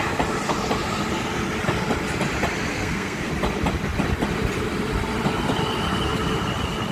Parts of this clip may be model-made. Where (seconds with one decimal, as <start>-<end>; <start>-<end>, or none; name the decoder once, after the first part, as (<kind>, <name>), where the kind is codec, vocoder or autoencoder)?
2.7-3.3 (codec, SNAC)